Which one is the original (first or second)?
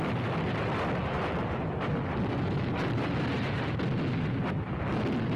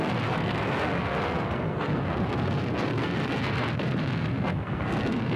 first